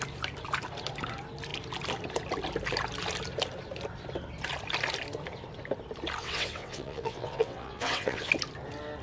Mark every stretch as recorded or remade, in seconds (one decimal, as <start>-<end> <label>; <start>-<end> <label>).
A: 0.0-6.2 recorded; 6.2-8.3 remade; 8.3-9.0 recorded